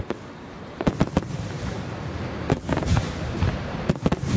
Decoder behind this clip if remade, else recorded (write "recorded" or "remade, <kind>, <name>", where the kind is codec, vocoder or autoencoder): remade, vocoder, BigVGAN v2